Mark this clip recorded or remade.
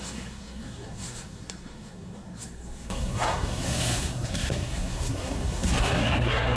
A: remade